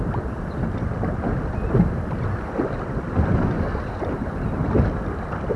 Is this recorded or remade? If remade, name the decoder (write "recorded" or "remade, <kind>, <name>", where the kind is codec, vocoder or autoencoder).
recorded